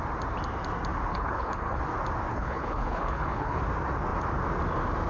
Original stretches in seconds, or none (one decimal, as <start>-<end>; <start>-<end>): 0.0-1.1; 1.8-2.3; 3.6-5.1

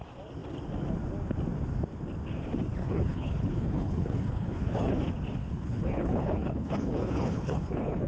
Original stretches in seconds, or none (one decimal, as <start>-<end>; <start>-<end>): 0.0-2.8; 5.0-5.4

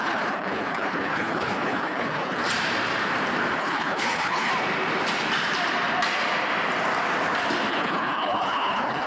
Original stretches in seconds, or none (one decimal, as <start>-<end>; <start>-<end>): 2.4-3.6; 4.5-7.7

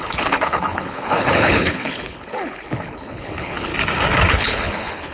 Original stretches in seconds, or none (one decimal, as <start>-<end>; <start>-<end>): 3.7-4.3

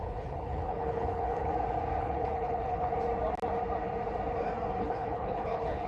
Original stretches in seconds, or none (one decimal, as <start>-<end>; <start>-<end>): 1.5-2.0; 2.9-4.8

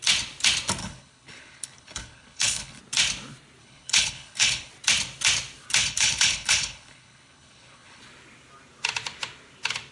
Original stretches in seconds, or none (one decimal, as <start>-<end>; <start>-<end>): 0.0-0.8; 2.8-3.6; 4.7-5.8; 8.0-9.9